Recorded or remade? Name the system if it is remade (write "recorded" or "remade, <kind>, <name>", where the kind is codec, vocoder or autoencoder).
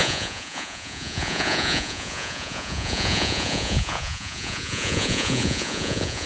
remade, vocoder, Vocos